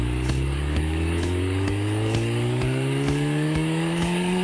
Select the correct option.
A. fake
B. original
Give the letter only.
A